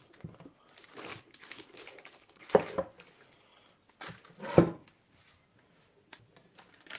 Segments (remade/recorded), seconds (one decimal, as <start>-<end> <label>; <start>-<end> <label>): 0.0-1.1 recorded; 1.1-2.5 remade; 2.5-7.0 recorded